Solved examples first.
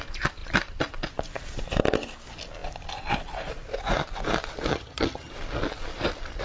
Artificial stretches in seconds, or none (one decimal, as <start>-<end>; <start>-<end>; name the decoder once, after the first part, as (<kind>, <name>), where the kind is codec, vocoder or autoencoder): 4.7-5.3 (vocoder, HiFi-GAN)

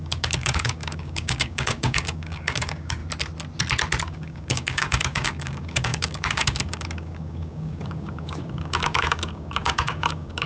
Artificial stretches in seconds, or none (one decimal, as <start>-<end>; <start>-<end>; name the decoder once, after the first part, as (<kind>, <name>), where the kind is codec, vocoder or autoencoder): 0.0-3.0 (codec, DAC); 4.0-10.5

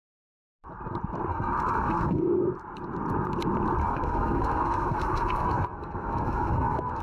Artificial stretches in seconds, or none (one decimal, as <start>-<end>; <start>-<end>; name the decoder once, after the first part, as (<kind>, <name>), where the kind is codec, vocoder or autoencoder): 1.3-2.4 (codec, SNAC); 3.8-7.0

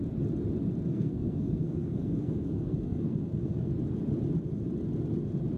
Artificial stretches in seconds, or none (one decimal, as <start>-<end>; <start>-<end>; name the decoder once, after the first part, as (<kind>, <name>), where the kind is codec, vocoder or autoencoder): 0.9-3.7 (codec, SNAC)

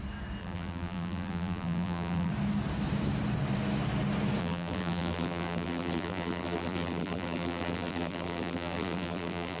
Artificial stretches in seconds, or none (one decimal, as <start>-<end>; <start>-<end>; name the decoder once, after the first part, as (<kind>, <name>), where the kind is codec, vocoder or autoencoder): 0.4-2.3 (vocoder, BigVGAN v2); 4.4-9.6

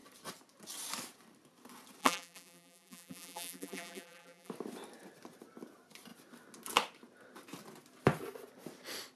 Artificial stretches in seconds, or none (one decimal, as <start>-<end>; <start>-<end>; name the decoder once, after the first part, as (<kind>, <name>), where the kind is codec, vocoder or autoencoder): 2.0-4.5 (vocoder, BigVGAN v2)